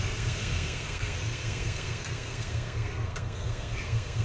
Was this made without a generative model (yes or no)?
no